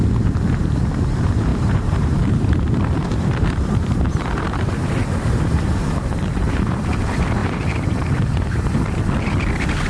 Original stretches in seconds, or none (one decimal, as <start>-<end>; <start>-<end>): 0.0-1.5; 2.6-3.0; 7.0-7.4; 8.5-9.9